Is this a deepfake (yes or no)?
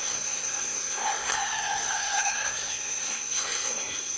yes